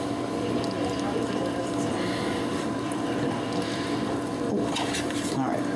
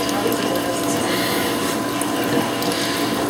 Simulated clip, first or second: first